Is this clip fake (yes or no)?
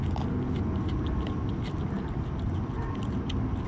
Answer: no